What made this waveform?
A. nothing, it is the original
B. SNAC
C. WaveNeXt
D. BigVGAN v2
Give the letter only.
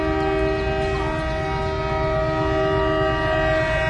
A